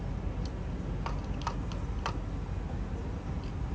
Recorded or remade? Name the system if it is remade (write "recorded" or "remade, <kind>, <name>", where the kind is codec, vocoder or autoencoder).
recorded